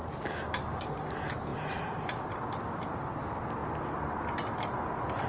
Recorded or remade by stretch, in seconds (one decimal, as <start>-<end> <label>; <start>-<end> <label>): 0.0-5.3 recorded